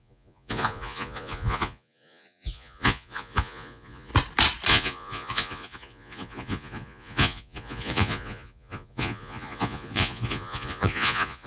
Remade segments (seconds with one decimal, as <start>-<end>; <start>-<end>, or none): 0.0-4.1; 4.7-11.5